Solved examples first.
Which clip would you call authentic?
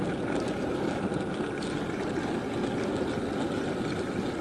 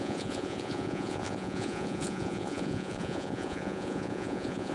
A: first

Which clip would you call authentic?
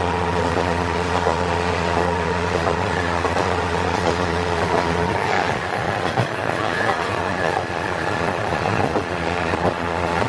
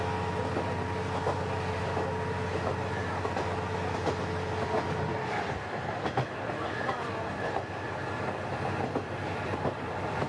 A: second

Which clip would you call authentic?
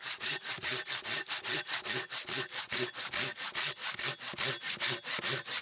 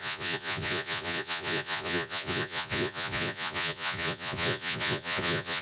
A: first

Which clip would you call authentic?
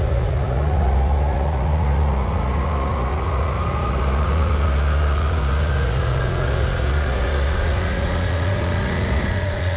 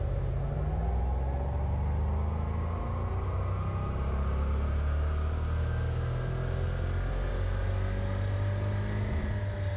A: second